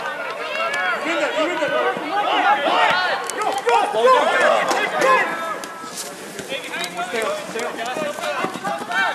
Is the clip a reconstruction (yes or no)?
no